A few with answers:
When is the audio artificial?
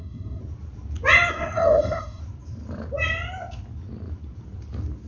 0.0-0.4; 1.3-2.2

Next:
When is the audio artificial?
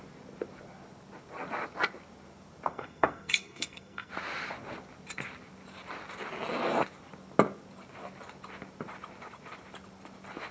2.7-4.1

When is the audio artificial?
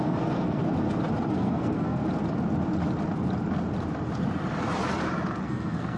0.0-0.6; 1.3-2.0; 5.4-6.0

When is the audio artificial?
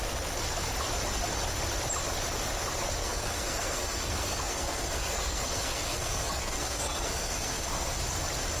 3.0-8.0